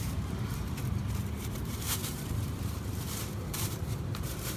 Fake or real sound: fake